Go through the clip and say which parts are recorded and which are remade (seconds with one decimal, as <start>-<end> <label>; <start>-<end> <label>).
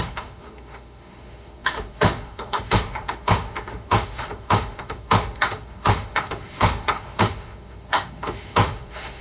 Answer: 0.0-9.2 remade